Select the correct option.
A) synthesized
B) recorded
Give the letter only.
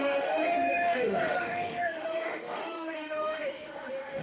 A